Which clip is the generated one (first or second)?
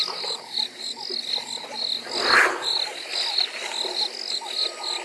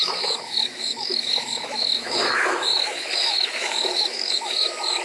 second